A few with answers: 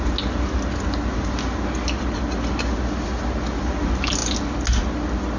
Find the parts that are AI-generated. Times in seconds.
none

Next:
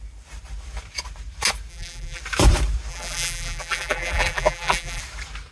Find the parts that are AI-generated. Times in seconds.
1.7-2.2 (vocoder, BigVGAN v2); 2.9-5.0

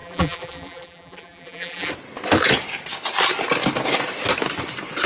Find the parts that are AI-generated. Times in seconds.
0.0-1.9 (vocoder, BigVGAN v2)

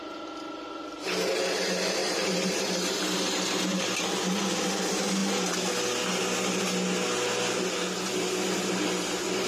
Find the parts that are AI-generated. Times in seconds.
2.0-4.0 (vocoder, BigVGAN v2)

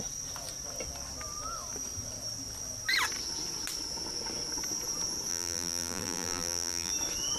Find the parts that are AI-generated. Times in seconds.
5.3-6.9 (vocoder, BigVGAN v2)

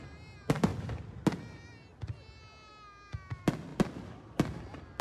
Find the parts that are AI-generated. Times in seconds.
none

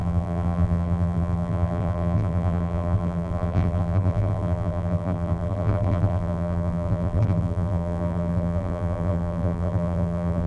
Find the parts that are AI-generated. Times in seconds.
0.0-10.5 (vocoder, BigVGAN v2)

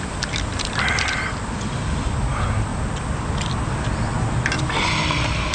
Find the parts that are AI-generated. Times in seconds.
none